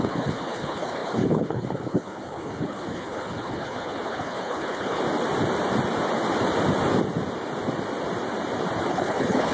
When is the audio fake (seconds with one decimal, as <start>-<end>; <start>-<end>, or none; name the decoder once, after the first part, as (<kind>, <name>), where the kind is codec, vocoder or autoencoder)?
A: 0.0-5.0 (codec, HILCodec); 8.9-9.5